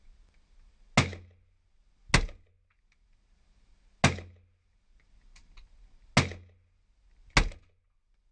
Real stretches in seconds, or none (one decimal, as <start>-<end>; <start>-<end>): 0.0-8.3